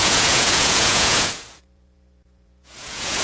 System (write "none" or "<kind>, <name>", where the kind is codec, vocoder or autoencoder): vocoder, Vocos